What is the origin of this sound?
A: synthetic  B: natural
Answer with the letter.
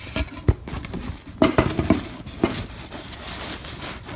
B